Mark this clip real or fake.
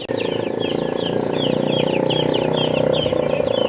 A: real